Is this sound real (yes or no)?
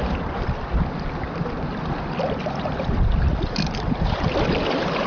yes